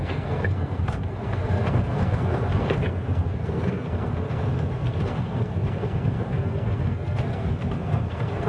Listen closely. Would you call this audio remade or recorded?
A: remade